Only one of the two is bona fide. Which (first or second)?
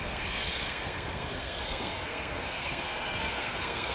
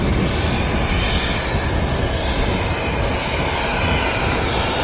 second